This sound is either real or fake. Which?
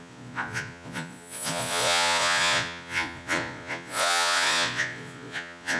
fake